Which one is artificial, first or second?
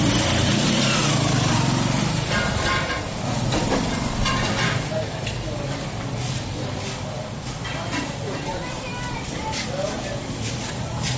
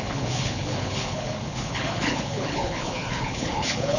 second